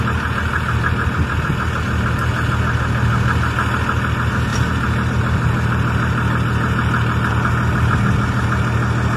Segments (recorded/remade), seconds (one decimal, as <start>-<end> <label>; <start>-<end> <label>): 0.0-9.2 recorded